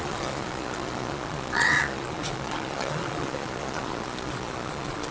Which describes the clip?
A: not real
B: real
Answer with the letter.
A